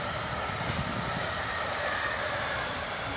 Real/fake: fake